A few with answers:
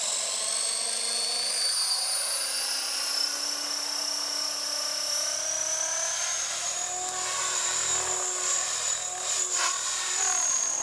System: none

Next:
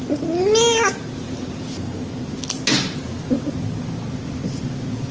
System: none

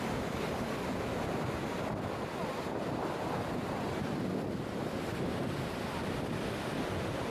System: none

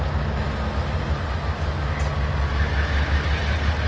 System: none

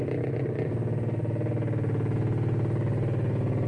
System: none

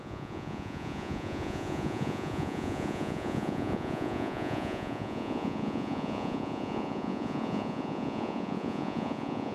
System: vocoder, Vocos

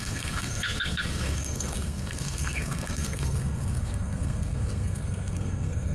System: codec, SNAC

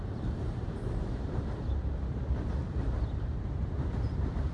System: vocoder, BigVGAN v2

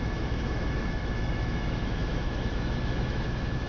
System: autoencoder, DAC-VAE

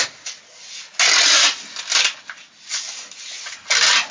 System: none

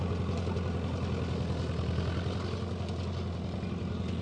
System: none